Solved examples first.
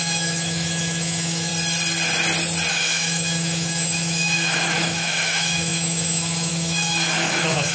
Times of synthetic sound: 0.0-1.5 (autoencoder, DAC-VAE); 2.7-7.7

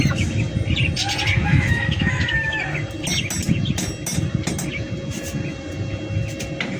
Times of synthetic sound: 1.5-2.6 (autoencoder, DAC-VAE)